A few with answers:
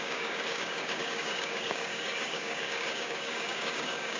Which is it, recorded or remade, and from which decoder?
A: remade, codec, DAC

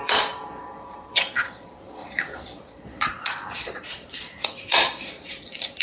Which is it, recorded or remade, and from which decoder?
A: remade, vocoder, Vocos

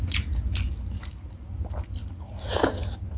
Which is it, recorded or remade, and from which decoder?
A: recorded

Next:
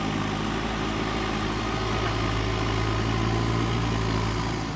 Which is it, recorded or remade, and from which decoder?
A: recorded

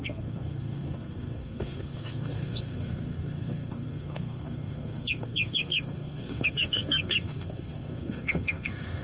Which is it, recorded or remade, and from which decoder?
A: remade, codec, SNAC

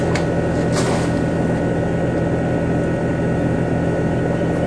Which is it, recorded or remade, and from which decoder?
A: recorded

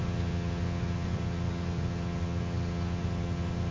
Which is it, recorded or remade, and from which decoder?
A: remade, vocoder, HiFi-GAN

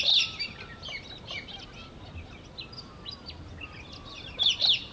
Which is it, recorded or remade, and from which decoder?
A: recorded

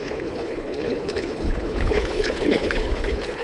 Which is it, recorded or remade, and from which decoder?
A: remade, codec, HILCodec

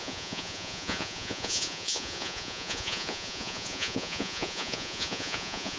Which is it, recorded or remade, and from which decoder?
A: remade, vocoder, Vocos